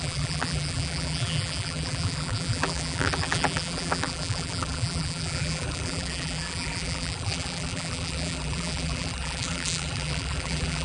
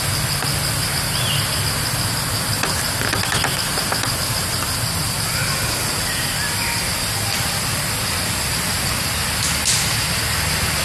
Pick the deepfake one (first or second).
first